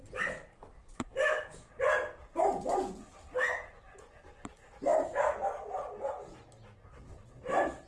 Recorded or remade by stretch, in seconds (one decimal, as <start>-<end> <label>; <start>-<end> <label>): 0.0-7.9 recorded